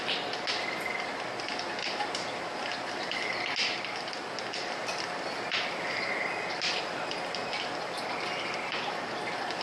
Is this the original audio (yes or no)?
yes